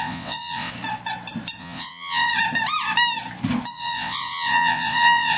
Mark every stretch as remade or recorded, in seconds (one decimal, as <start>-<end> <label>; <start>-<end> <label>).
0.0-0.7 remade; 0.7-1.6 recorded; 1.6-2.3 remade; 2.3-3.7 recorded; 3.7-5.4 remade